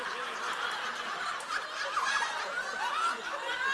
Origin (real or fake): real